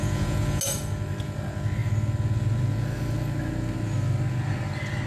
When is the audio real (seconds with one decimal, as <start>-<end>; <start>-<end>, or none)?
0.6-5.1